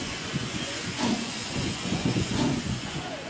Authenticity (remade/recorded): remade